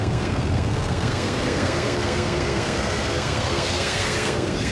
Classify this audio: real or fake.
fake